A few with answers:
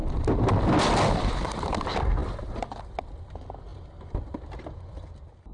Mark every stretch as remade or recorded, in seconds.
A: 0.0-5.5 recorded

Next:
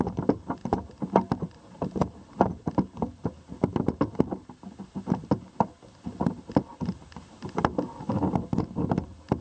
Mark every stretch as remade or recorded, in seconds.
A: 0.0-9.4 recorded

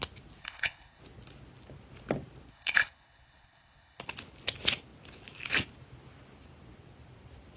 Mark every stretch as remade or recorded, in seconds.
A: 0.0-0.4 recorded; 0.4-1.0 remade; 1.0-2.5 recorded; 2.5-4.0 remade; 4.0-7.6 recorded

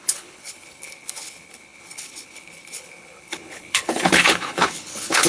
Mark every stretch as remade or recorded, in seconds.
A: 0.0-5.3 remade